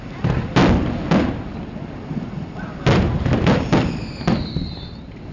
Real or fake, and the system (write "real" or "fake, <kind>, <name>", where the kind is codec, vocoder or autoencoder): real